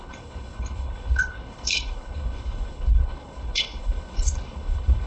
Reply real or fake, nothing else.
fake